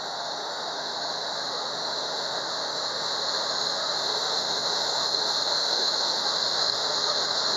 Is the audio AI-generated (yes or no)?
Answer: yes